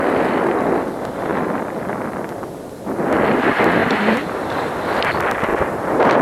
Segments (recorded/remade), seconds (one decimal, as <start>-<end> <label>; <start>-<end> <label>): 0.0-3.8 recorded; 3.8-4.8 remade; 4.8-5.5 recorded; 5.5-6.2 remade